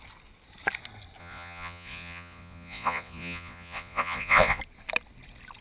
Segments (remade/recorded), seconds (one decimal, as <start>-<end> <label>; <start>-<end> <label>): 0.0-1.2 recorded; 1.2-4.6 remade; 4.6-5.6 recorded